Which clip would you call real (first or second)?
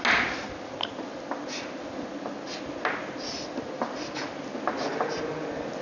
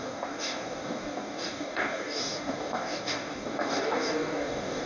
first